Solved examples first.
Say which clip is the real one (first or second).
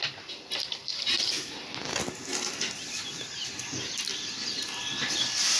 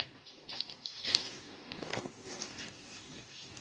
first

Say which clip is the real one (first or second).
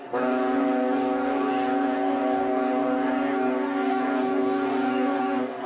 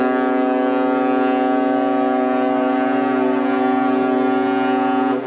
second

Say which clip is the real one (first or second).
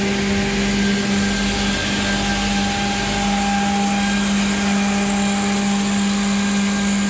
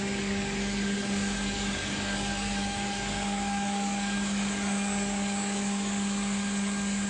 first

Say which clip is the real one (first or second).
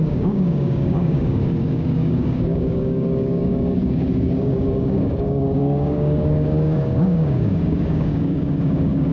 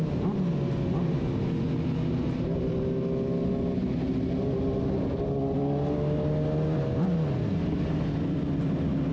second